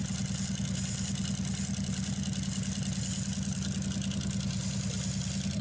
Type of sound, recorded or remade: recorded